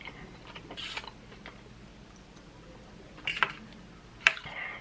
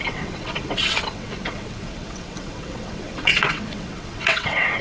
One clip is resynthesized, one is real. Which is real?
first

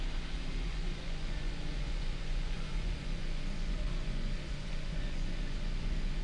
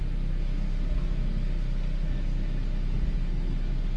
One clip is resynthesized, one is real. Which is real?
second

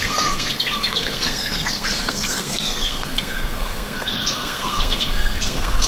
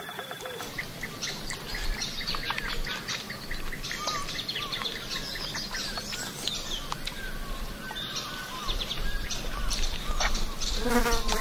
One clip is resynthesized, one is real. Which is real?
second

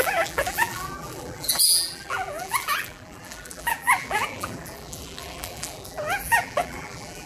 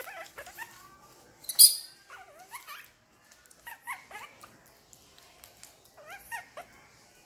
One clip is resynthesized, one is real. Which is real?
second